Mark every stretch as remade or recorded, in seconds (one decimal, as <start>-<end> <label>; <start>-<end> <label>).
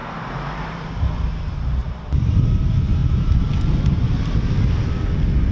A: 0.0-0.9 remade; 0.9-1.8 recorded; 1.8-2.6 remade; 2.6-3.0 recorded; 3.0-4.2 remade; 4.2-5.5 recorded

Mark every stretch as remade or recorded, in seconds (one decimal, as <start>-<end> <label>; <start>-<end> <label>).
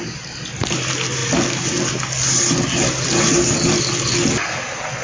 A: 0.0-5.0 recorded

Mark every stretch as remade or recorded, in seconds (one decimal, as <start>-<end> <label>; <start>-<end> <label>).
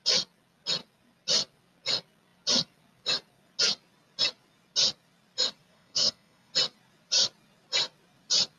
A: 0.0-5.7 recorded; 5.7-6.5 remade; 6.5-8.6 recorded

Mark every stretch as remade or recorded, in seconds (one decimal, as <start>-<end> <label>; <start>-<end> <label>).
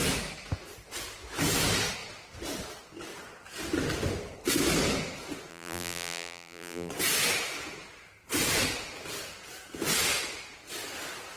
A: 0.0-5.5 recorded; 5.5-6.9 remade; 6.9-11.4 recorded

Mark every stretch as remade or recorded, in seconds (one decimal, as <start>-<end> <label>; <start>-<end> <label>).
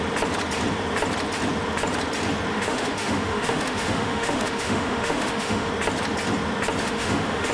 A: 0.0-2.5 recorded; 2.5-5.7 remade; 5.7-6.8 recorded; 6.8-7.5 remade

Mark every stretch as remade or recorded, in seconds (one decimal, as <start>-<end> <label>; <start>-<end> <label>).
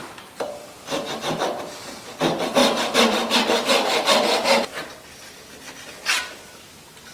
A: 0.0-1.6 remade; 1.6-2.6 recorded; 2.6-4.7 remade; 4.7-7.1 recorded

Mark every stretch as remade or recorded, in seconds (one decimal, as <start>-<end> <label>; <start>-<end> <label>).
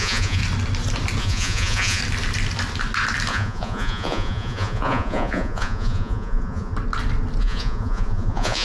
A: 0.0-0.4 remade; 0.4-1.2 recorded; 1.2-2.0 remade; 2.0-3.3 recorded; 3.3-6.7 remade; 6.7-7.4 recorded; 7.4-8.6 remade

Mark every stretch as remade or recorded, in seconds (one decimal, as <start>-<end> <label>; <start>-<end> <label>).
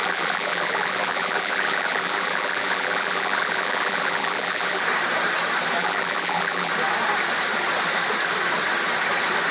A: 0.0-4.8 remade; 4.8-5.8 recorded; 5.8-6.7 remade; 6.7-9.5 recorded